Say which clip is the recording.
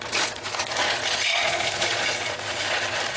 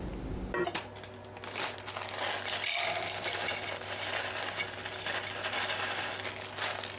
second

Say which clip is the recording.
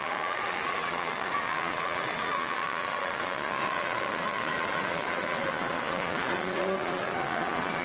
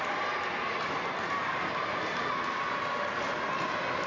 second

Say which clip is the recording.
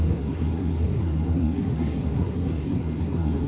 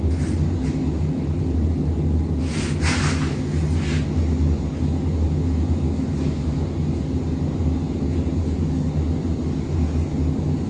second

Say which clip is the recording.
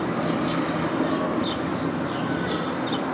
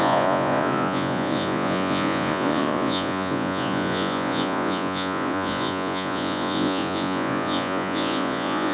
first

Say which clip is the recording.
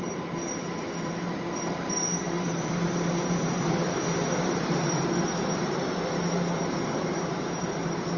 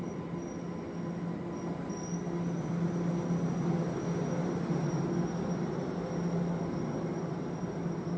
second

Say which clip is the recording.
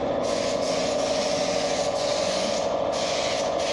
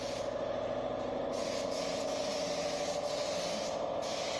second